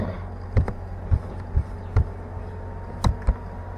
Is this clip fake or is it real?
real